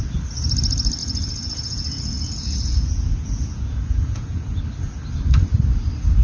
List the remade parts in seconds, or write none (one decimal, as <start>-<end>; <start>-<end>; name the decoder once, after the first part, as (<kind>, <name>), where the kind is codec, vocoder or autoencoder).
1.0-4.6 (vocoder, Vocos)